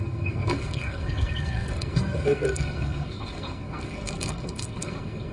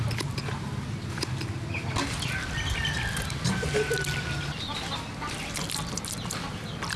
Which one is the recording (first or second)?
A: second